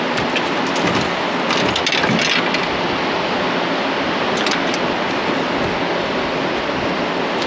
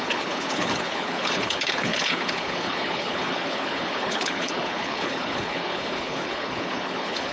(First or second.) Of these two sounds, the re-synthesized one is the second